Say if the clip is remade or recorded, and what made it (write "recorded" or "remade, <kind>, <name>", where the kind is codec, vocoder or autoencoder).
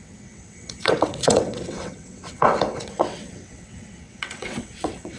remade, vocoder, WaveNeXt